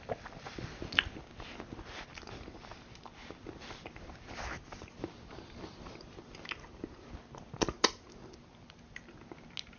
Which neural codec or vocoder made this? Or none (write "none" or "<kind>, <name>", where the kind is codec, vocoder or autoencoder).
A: none